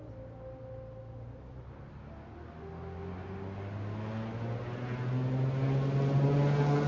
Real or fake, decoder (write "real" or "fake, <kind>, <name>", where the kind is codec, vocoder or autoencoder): real